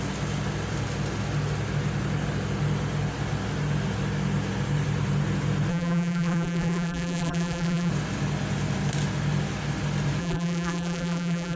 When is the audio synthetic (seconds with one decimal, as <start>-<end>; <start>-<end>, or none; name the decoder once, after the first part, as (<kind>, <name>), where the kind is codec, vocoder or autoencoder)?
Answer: 5.7-7.9 (vocoder, BigVGAN v2); 10.2-11.6